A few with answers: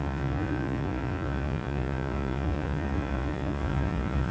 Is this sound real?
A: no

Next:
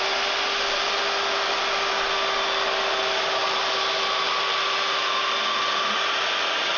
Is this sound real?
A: yes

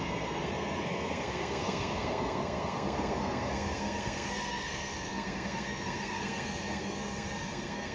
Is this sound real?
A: no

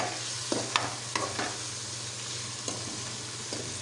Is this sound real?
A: yes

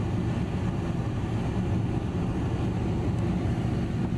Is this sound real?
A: yes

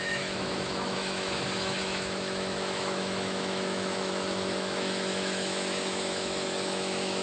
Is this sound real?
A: no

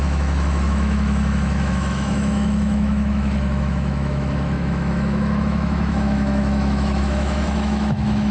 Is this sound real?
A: no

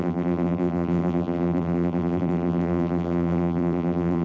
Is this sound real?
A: no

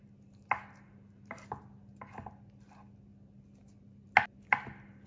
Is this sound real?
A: yes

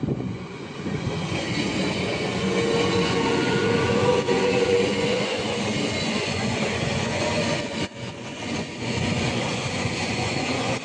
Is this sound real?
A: no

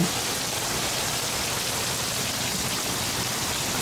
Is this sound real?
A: yes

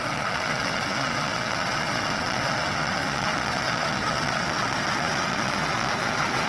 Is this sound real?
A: no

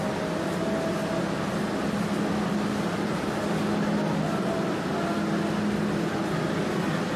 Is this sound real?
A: yes